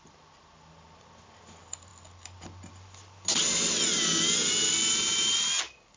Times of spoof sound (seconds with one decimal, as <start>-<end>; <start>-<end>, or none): none